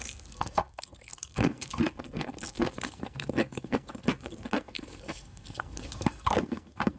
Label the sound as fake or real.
fake